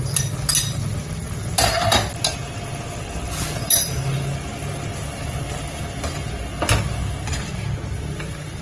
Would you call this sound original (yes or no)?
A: yes